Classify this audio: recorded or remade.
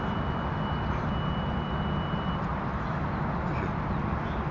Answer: recorded